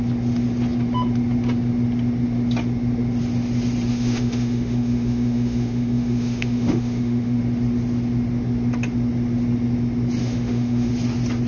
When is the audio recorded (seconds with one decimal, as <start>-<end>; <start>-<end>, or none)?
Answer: 0.0-3.9; 7.4-10.2; 10.9-11.5